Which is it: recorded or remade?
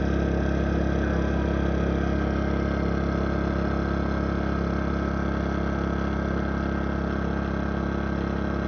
recorded